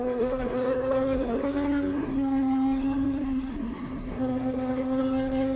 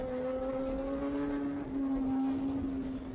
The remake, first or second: first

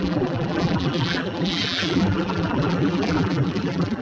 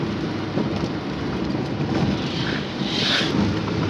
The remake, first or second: first